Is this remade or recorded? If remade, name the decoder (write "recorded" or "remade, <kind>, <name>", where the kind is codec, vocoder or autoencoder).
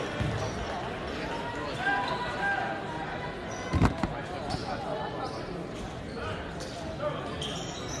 recorded